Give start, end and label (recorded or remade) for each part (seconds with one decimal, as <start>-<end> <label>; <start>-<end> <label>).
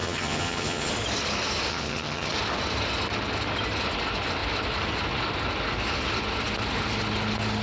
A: 0.0-0.9 remade; 0.9-1.7 recorded; 1.7-2.3 remade; 2.3-7.6 recorded